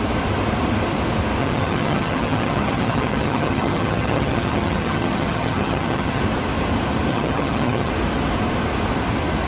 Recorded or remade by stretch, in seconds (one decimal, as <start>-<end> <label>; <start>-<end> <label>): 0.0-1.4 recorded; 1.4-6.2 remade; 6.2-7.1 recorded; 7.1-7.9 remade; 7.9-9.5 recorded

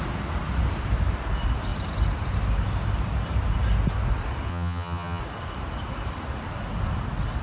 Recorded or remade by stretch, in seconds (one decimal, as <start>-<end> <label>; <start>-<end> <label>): 0.0-4.5 recorded; 4.5-5.2 remade; 5.2-7.4 recorded

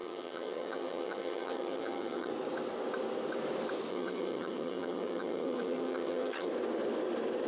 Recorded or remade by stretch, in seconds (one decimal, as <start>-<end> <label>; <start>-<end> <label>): 0.0-2.3 remade; 2.3-3.9 recorded; 3.9-6.5 remade; 6.5-7.5 recorded